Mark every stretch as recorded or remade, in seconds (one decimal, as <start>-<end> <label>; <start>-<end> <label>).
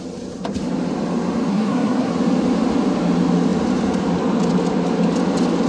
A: 0.0-1.5 recorded; 1.5-2.1 remade; 2.1-5.7 recorded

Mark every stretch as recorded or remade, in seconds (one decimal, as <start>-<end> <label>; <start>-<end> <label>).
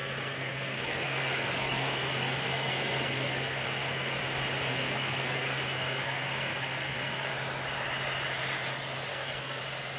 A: 0.0-4.2 remade; 4.2-4.7 recorded; 4.7-7.3 remade; 7.3-9.1 recorded; 9.1-9.6 remade; 9.6-10.0 recorded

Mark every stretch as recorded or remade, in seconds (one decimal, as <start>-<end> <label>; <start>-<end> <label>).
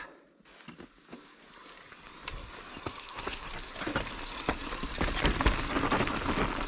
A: 0.0-2.9 recorded; 2.9-3.5 remade; 3.5-6.7 recorded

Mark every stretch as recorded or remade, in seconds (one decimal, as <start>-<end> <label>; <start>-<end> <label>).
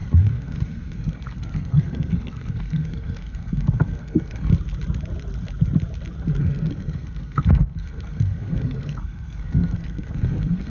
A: 0.0-4.5 remade; 4.5-6.4 recorded; 6.4-10.7 remade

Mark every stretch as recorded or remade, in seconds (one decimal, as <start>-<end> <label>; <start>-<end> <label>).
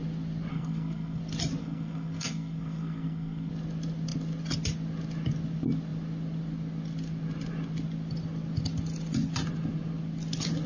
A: 0.0-0.5 recorded; 0.5-1.2 remade; 1.2-1.6 recorded; 1.6-3.5 remade; 3.5-10.7 recorded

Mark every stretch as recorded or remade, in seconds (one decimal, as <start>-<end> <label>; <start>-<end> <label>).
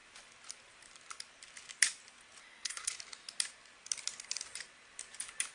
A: 0.0-2.4 recorded; 2.4-2.9 remade; 2.9-5.5 recorded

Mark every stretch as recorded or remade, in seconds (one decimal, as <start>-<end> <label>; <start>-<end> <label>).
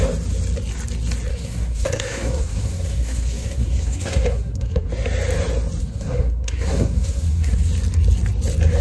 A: 0.0-1.3 recorded; 1.3-4.9 remade; 4.9-5.8 recorded; 5.8-7.7 remade; 7.7-8.8 recorded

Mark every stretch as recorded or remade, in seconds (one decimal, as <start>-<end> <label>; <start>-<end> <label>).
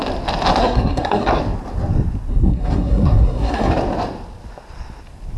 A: 0.0-0.6 recorded; 0.6-1.4 remade; 1.4-2.3 recorded; 2.3-3.7 remade; 3.7-5.4 recorded